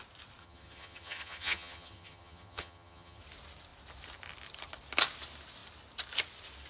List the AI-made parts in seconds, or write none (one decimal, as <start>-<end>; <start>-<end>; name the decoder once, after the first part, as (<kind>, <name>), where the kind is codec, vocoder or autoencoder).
0.4-3.2 (vocoder, HiFi-GAN)